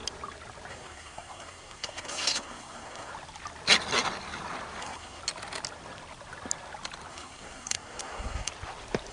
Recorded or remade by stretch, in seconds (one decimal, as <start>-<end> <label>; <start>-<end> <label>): 0.0-0.7 recorded; 0.7-3.1 remade; 3.1-4.8 recorded; 4.8-5.2 remade; 5.2-7.1 recorded; 7.1-8.5 remade; 8.5-9.1 recorded